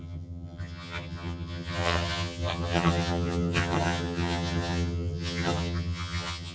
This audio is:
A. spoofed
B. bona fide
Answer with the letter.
A